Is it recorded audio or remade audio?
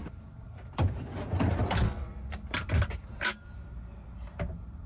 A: remade